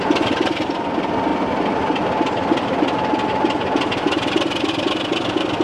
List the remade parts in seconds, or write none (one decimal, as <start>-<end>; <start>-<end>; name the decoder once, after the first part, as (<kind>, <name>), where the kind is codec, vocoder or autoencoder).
none